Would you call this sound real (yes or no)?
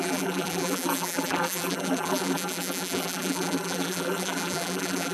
no